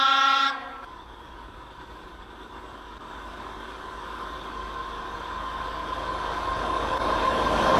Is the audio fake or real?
fake